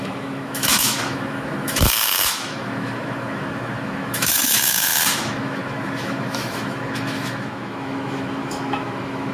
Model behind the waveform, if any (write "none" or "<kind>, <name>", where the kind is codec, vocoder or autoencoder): autoencoder, DAC-VAE